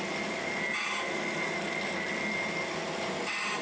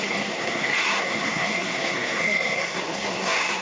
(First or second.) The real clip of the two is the first